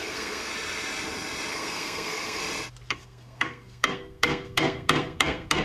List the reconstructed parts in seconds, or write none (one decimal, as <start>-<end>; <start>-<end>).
0.0-0.5; 1.5-2.4; 2.9-5.6